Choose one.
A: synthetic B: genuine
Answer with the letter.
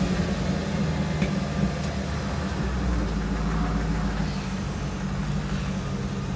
B